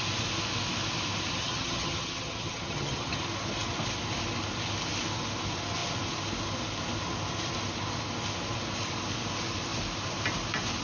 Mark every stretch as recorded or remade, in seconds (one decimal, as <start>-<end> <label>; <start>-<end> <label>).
0.0-1.4 recorded; 1.4-3.2 remade; 3.2-10.8 recorded

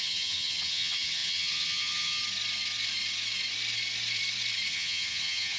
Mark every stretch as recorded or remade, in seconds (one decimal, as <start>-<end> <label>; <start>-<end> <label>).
0.0-2.2 remade; 2.2-4.7 recorded; 4.7-5.6 remade

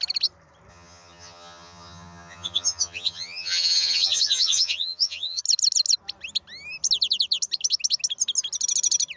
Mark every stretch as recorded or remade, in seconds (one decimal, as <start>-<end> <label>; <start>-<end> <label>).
0.0-0.7 recorded; 0.7-5.4 remade; 5.4-9.2 recorded

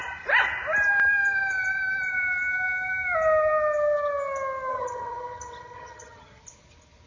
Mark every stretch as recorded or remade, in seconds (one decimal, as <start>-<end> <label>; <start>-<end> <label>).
0.0-4.7 recorded; 4.7-6.4 remade; 6.4-7.1 recorded

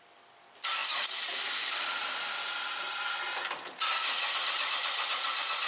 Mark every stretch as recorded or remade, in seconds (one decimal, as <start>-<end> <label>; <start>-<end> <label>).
0.0-5.7 recorded